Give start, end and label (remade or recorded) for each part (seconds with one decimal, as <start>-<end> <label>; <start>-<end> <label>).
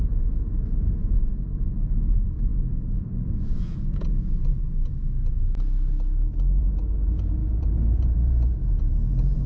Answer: 0.0-4.5 remade; 4.5-6.6 recorded; 6.6-9.5 remade